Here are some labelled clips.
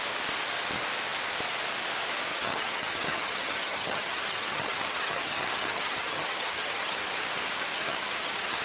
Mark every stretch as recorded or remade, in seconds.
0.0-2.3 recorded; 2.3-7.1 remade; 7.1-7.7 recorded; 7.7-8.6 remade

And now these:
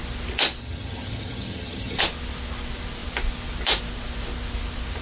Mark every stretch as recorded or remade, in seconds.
0.0-0.6 recorded; 0.6-2.0 remade; 2.0-5.0 recorded

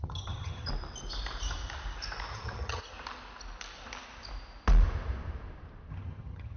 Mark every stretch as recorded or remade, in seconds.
0.0-0.7 remade; 0.7-2.3 recorded; 2.3-2.8 remade; 2.8-5.9 recorded; 5.9-6.6 remade

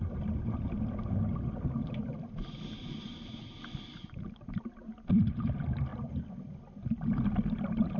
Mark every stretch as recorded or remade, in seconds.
0.0-8.0 recorded

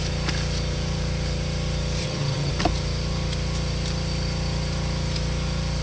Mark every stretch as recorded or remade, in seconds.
0.0-2.0 recorded; 2.0-2.5 remade; 2.5-5.8 recorded

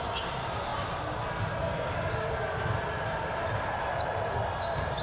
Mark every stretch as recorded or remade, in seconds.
0.0-5.0 recorded

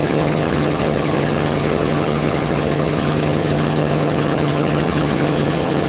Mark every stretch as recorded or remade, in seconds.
0.0-5.9 remade